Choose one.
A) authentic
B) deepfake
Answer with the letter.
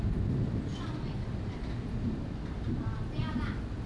A